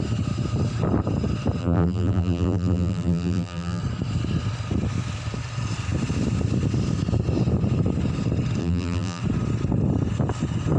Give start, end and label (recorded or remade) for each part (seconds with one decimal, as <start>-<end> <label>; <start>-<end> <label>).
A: 0.0-1.6 recorded; 1.6-3.8 remade; 3.8-8.6 recorded; 8.6-9.2 remade; 9.2-10.8 recorded